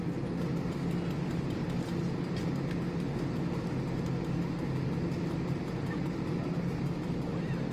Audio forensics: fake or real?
real